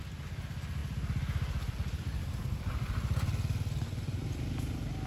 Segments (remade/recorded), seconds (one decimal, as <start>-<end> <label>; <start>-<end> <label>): 0.0-5.1 recorded